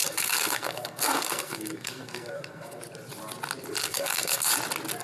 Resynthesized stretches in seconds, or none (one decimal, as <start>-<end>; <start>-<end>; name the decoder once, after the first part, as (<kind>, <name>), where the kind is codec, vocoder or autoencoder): 0.0-2.8 (codec, SNAC); 3.8-4.5